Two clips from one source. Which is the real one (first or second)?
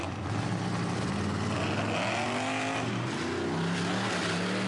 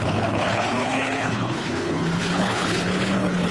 first